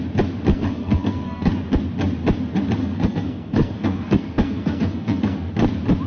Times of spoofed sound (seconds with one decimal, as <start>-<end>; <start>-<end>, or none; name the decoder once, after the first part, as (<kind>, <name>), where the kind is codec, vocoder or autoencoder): 0.5-1.5 (codec, SNAC); 2.8-5.5